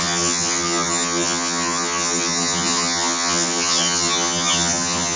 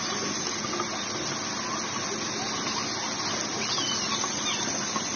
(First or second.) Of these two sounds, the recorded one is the second